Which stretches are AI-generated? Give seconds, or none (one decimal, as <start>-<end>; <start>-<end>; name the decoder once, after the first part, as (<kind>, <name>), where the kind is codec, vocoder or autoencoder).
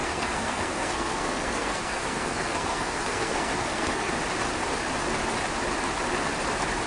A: 0.0-4.1 (codec, SNAC)